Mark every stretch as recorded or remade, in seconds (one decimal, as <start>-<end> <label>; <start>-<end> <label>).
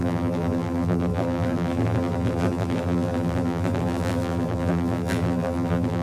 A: 0.0-6.0 remade